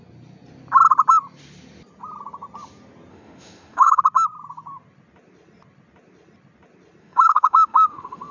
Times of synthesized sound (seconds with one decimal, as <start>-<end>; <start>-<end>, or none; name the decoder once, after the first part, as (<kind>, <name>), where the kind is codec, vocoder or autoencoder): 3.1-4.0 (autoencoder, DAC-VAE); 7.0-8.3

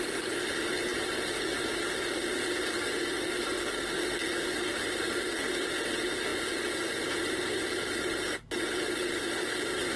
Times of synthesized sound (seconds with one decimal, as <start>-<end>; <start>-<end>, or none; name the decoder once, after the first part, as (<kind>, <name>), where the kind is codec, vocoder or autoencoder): none

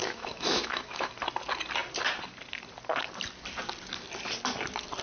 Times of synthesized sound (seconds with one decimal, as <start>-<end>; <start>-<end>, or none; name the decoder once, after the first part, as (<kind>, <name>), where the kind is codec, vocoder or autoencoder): 0.0-1.1 (autoencoder, DAC-VAE)